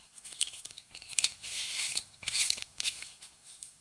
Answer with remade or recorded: remade